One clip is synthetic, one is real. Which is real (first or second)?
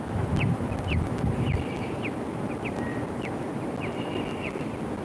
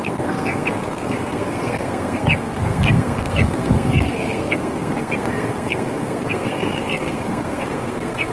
first